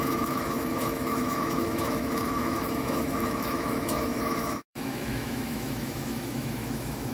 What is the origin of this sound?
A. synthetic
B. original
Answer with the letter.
A